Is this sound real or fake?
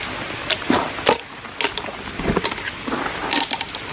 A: real